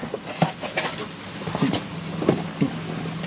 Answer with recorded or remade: recorded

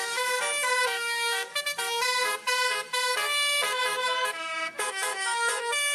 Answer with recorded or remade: remade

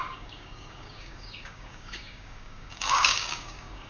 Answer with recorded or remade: remade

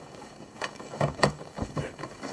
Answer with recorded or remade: remade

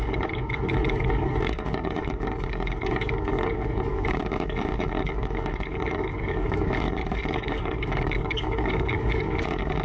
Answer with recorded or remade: remade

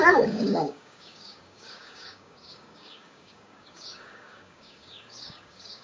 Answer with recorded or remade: remade